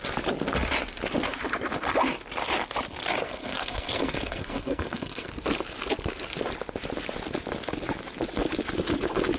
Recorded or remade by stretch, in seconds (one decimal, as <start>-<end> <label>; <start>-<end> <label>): 0.0-3.2 recorded; 3.2-5.3 remade; 5.3-9.4 recorded